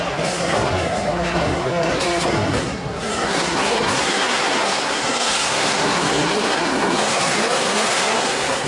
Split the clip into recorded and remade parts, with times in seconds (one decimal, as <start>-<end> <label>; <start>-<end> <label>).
0.0-8.7 remade